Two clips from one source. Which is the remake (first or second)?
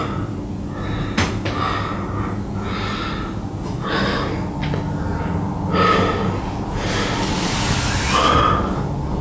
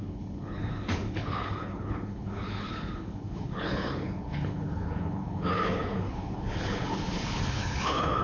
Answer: second